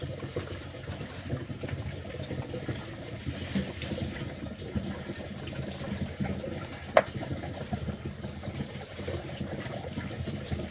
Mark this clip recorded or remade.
recorded